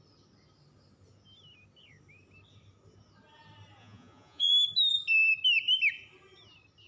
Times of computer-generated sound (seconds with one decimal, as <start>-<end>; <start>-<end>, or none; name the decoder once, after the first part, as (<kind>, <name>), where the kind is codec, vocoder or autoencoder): 3.8-4.5 (vocoder, Vocos)